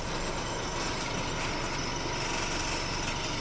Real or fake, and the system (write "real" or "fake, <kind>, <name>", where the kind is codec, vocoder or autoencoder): real